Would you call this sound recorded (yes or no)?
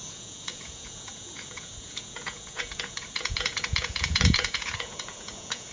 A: no